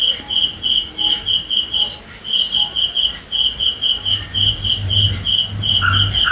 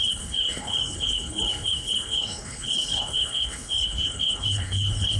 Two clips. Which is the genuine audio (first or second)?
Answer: first